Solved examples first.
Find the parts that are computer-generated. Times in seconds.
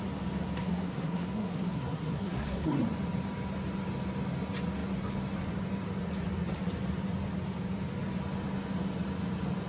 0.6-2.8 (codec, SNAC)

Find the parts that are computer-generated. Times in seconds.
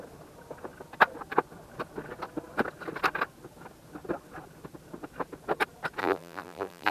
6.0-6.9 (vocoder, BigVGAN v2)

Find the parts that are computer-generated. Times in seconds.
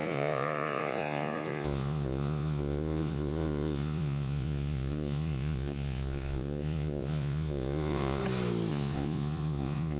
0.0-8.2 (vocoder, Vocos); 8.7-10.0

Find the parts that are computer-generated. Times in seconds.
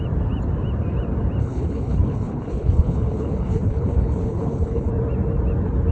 1.4-4.9 (codec, HILCodec)